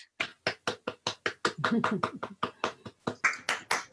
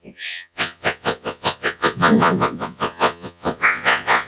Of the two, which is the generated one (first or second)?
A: second